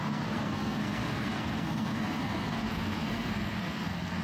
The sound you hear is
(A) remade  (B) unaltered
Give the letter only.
A